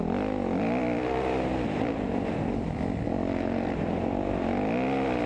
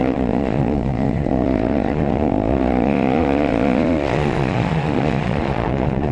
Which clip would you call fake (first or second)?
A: second